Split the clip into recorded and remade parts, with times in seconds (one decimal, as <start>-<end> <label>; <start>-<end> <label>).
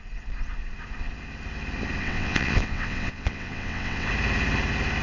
0.0-2.0 recorded; 2.0-4.1 remade; 4.1-5.0 recorded